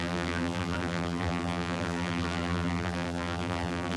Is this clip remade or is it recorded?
remade